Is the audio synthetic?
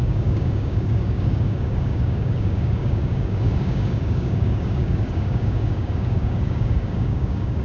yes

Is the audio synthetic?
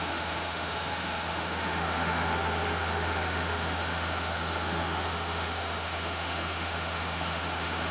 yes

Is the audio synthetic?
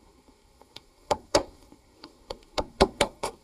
yes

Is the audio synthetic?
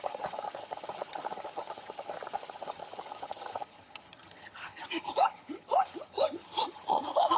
yes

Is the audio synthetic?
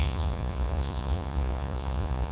yes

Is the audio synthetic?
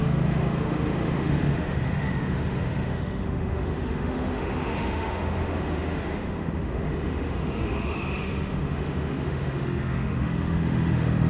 yes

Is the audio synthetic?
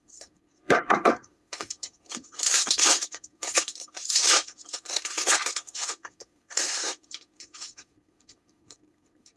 yes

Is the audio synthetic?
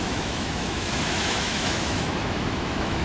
yes